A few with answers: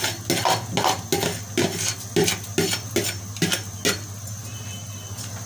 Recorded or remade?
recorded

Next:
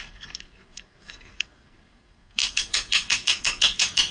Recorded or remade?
remade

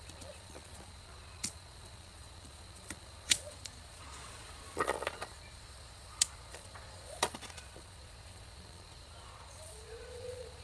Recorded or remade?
remade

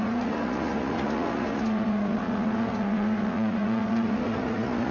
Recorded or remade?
remade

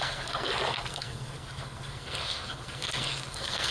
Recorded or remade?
remade